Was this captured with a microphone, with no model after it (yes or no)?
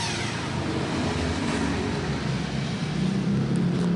yes